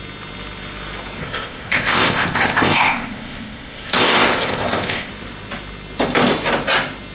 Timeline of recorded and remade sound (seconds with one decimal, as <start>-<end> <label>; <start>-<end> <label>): 0.0-1.2 recorded; 1.2-5.1 remade; 5.1-7.1 recorded